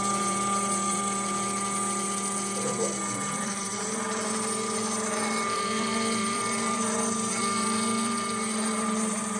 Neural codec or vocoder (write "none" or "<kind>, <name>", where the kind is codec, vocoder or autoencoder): vocoder, BigVGAN v2